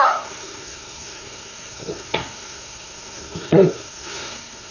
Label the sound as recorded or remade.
remade